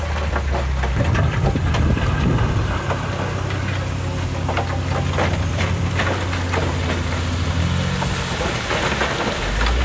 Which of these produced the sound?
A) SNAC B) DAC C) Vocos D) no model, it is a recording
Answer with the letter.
D